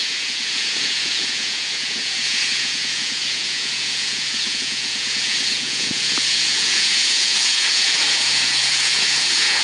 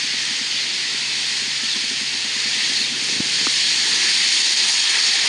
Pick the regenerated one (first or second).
first